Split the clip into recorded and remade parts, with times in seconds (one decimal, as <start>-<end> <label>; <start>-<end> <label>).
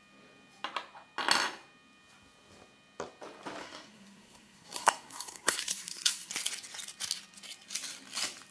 0.0-3.6 recorded; 3.6-6.3 remade; 6.3-8.5 recorded